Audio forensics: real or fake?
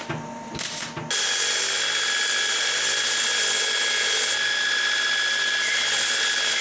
real